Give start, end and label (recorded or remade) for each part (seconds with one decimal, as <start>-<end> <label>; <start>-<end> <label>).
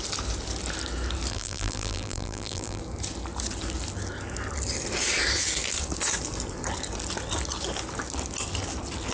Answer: 0.0-1.3 recorded; 1.3-2.8 remade; 2.8-9.1 recorded